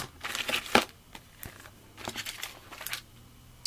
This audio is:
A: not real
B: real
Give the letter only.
B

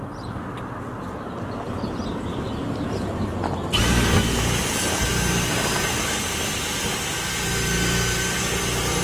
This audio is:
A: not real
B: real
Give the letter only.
B